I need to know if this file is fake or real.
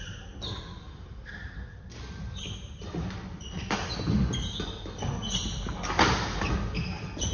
real